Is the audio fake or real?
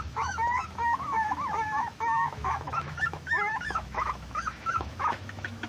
fake